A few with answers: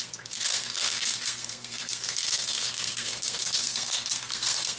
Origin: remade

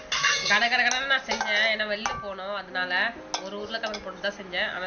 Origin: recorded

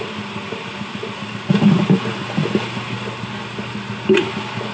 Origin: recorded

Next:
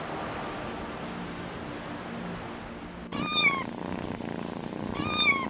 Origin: recorded